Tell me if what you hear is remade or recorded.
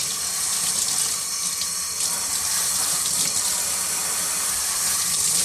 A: recorded